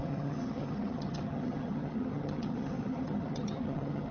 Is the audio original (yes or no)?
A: no